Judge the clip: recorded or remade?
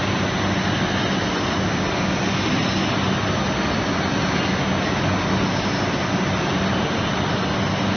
recorded